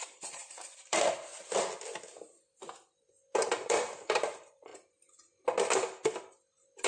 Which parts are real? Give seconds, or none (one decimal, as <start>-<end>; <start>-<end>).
1.3-3.6; 4.7-6.9

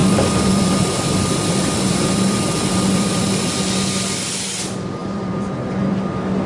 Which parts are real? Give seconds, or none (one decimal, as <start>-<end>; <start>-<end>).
3.5-5.0; 5.9-6.5

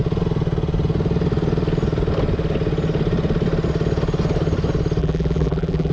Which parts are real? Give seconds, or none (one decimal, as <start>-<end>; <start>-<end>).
0.0-5.0